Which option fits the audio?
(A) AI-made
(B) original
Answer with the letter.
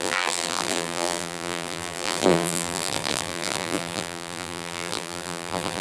A